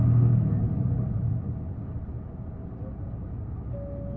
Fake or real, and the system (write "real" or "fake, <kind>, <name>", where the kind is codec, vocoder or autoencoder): real